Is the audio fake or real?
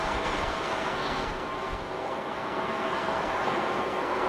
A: fake